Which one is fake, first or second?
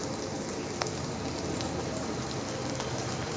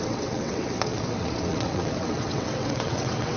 second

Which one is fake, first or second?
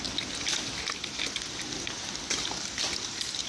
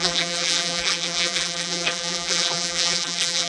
second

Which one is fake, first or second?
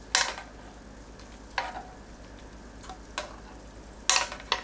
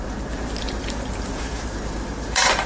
second